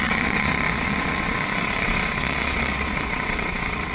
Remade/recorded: remade